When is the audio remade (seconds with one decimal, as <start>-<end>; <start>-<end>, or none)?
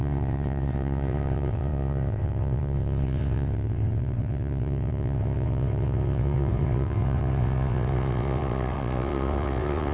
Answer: 0.0-9.9